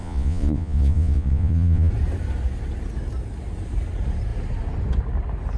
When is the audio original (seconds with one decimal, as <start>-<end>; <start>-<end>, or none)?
1.9-5.6